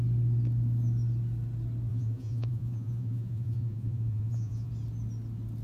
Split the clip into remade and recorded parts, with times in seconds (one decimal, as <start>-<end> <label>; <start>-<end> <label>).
0.0-1.9 recorded; 1.9-4.7 remade; 4.7-5.6 recorded